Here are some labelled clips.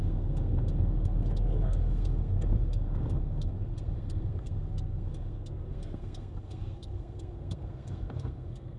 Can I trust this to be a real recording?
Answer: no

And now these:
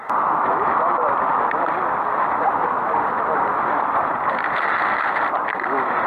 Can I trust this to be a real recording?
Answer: yes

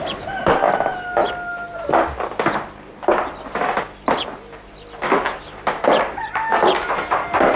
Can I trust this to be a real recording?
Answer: yes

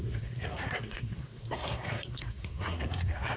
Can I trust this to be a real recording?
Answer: no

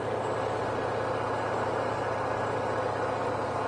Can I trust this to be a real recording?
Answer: yes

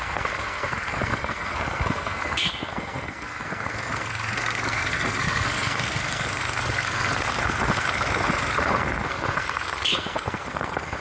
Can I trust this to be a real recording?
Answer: no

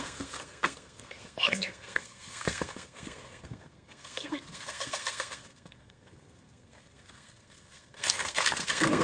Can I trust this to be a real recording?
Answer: no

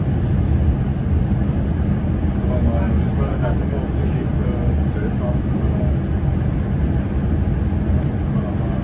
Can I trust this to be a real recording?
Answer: yes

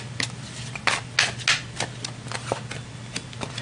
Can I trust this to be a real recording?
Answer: yes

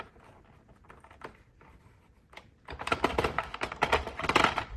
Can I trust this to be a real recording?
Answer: yes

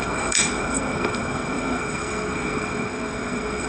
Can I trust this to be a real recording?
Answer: no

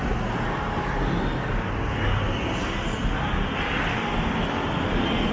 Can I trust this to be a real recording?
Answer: yes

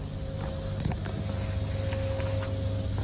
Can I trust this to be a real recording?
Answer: yes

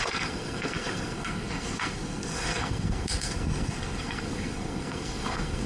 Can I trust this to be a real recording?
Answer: no